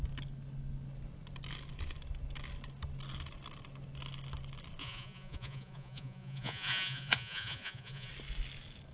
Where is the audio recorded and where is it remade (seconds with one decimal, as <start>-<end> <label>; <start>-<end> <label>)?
0.0-4.8 recorded; 4.8-8.1 remade; 8.1-8.9 recorded